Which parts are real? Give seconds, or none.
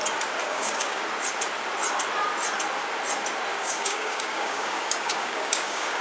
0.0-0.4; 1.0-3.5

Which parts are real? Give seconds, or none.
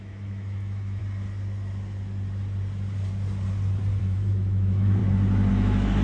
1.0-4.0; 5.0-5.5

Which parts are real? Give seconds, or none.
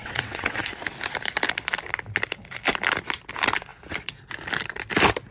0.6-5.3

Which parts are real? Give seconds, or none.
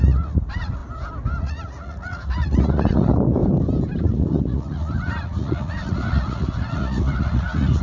0.8-1.4; 3.4-4.0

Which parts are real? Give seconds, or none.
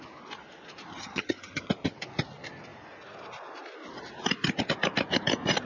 0.0-0.9; 1.7-5.7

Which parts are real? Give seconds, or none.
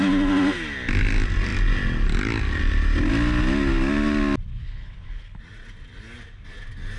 0.0-4.5; 5.4-7.0